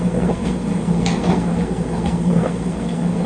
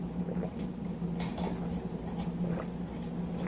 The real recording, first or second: second